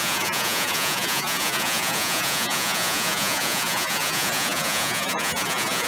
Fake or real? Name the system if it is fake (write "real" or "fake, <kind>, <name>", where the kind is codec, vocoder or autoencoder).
fake, vocoder, Vocos